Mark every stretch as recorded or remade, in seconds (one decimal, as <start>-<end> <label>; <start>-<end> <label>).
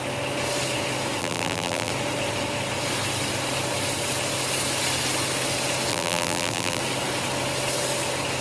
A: 0.0-1.2 recorded; 1.2-1.9 remade; 1.9-5.9 recorded; 5.9-6.8 remade; 6.8-8.4 recorded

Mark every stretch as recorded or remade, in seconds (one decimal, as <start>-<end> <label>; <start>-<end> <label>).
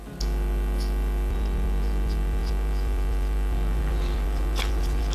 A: 0.0-5.1 recorded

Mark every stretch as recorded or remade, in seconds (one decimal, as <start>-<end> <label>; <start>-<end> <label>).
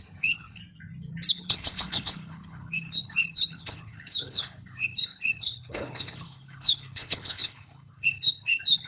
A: 0.0-0.6 remade; 0.6-1.3 recorded; 1.3-8.9 remade